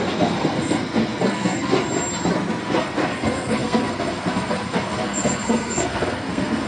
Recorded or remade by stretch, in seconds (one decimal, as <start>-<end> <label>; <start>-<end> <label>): 0.0-1.8 remade; 1.8-2.6 recorded; 2.6-6.7 remade